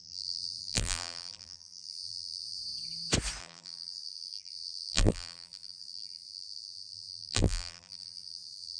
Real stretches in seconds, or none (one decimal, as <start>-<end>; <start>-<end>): 2.6-3.4